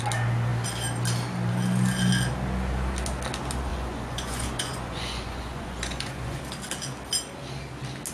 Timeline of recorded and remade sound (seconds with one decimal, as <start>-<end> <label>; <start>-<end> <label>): 0.0-3.7 recorded; 3.7-6.4 remade; 6.4-8.1 recorded